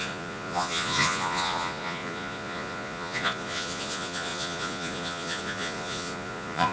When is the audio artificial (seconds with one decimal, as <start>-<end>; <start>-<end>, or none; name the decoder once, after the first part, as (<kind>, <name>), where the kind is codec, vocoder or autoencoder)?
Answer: 0.0-6.7 (vocoder, Vocos)